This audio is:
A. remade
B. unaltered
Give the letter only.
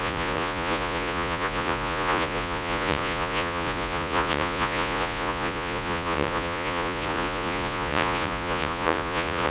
A